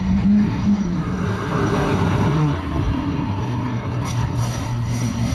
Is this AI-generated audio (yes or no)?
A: yes